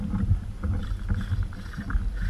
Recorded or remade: recorded